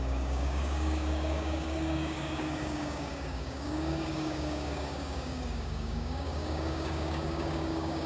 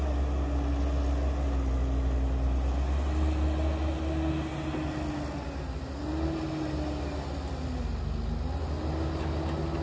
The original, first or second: second